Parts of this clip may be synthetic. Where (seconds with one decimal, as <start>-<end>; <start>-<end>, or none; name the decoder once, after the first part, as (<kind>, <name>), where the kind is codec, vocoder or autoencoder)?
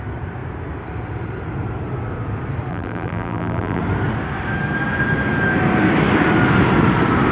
2.7-3.8 (vocoder, BigVGAN v2)